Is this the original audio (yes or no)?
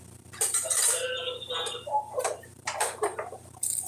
yes